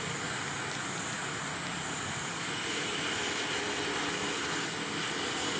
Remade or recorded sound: recorded